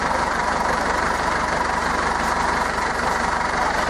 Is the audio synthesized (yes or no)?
yes